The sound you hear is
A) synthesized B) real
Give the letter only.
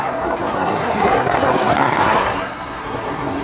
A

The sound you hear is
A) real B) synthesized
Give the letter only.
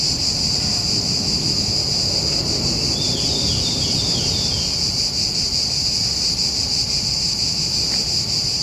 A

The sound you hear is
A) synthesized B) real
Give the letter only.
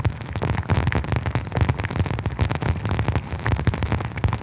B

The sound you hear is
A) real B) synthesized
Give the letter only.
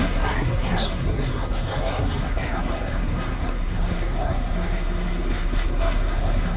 B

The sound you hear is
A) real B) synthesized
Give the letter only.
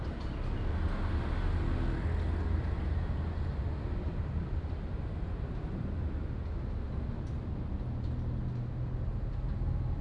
A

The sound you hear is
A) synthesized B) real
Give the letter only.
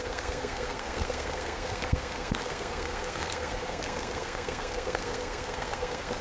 A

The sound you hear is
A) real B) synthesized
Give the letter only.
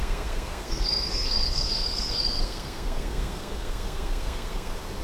B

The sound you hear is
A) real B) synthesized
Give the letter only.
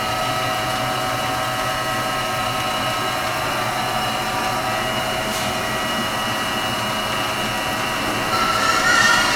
A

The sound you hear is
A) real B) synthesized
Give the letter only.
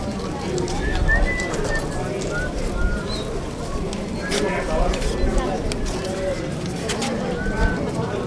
A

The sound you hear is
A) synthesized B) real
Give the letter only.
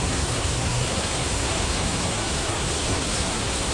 A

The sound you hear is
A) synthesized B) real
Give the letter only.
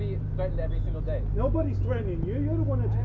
B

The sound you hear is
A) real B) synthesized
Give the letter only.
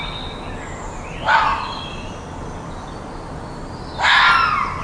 A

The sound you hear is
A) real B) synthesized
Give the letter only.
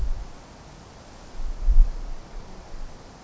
A